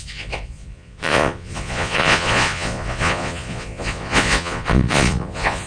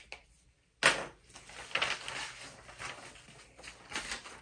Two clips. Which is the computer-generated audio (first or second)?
first